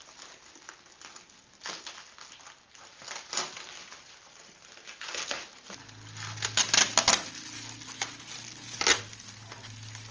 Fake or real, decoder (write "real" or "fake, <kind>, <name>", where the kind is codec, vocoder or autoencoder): real